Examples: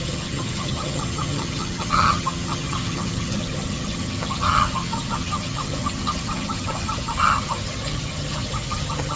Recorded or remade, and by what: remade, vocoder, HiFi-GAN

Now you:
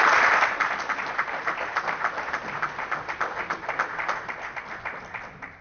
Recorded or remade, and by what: recorded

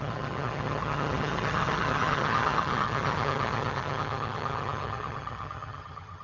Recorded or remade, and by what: remade, vocoder, HiFi-GAN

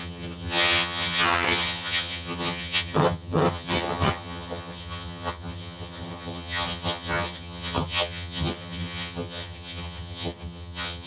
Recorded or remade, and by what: remade, vocoder, HiFi-GAN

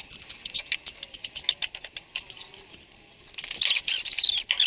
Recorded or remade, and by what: recorded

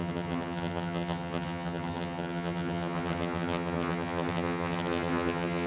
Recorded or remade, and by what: remade, vocoder, HiFi-GAN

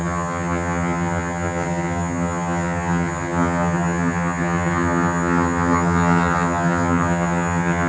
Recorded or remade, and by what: remade, vocoder, HiFi-GAN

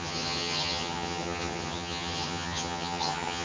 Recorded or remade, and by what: remade, vocoder, HiFi-GAN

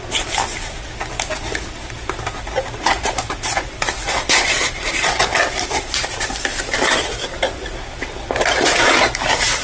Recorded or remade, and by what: recorded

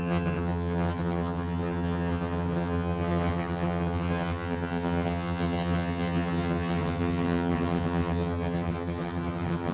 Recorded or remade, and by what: remade, vocoder, HiFi-GAN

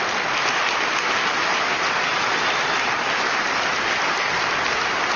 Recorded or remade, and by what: recorded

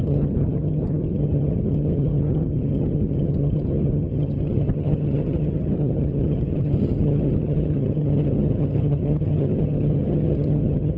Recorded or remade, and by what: remade, vocoder, HiFi-GAN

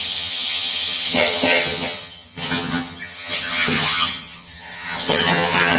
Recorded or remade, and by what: remade, vocoder, HiFi-GAN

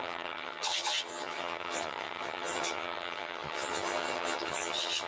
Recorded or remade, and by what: remade, vocoder, HiFi-GAN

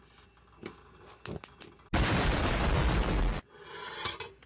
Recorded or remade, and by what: recorded